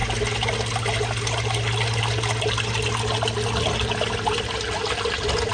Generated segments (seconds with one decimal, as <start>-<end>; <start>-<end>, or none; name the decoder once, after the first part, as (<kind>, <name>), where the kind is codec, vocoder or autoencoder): none